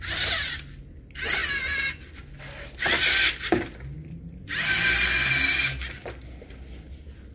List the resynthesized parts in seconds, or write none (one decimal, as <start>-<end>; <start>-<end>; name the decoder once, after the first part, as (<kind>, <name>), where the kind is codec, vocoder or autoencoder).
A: none